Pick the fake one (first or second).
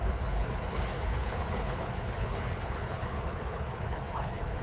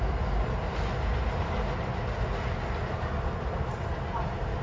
first